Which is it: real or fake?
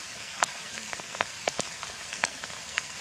fake